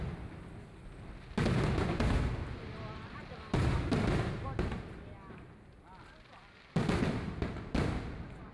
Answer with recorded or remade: recorded